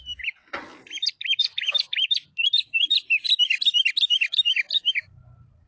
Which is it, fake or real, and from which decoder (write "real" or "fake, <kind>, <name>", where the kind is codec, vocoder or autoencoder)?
fake, vocoder, BigVGAN v2